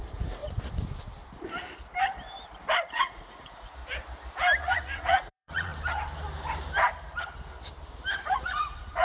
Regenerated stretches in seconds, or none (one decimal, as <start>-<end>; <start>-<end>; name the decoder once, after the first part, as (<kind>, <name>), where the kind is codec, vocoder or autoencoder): 0.0-0.4 (vocoder, Vocos); 2.9-3.8; 4.6-5.7; 8.3-9.0